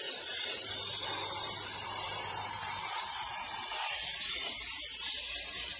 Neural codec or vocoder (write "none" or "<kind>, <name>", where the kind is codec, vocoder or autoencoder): vocoder, BigVGAN v2